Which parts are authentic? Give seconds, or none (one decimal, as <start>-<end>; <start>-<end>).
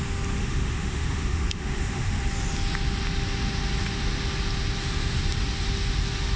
0.0-0.4; 2.2-6.4